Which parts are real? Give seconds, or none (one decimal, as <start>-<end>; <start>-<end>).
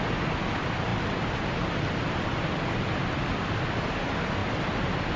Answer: 0.0-5.2